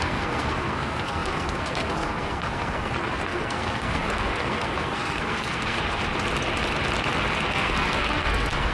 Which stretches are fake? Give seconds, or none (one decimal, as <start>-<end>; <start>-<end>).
0.0-6.0; 7.3-8.7